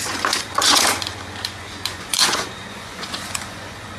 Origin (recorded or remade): remade